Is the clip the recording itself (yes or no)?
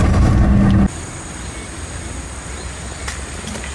yes